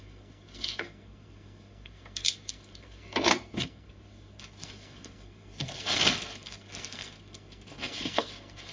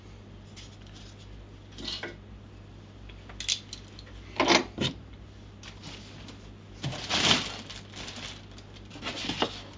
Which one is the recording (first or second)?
second